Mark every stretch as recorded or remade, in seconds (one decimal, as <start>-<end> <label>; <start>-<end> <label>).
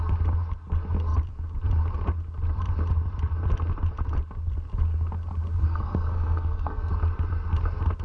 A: 0.0-5.6 recorded; 5.6-6.9 remade; 6.9-8.0 recorded